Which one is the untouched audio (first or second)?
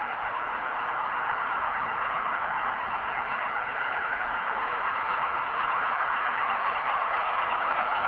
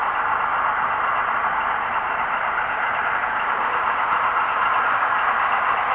second